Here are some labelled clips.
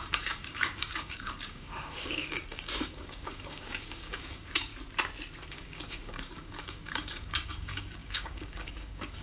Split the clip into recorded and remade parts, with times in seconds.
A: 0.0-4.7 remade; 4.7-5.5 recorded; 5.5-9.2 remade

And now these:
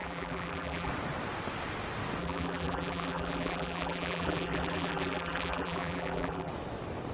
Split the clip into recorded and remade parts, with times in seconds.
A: 0.0-0.9 remade; 0.9-2.2 recorded; 2.2-6.5 remade; 6.5-7.1 recorded